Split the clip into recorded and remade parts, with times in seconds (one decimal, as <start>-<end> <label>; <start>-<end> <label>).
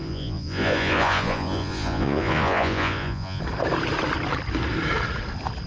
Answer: 0.0-3.4 remade; 3.4-5.7 recorded